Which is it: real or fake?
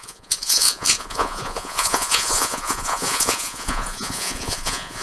fake